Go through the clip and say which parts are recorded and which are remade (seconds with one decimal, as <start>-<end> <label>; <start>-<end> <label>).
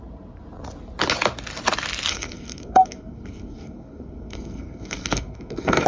0.0-2.1 recorded; 2.1-5.9 remade